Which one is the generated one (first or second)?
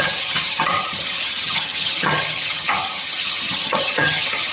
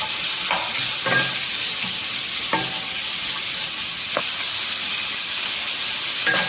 first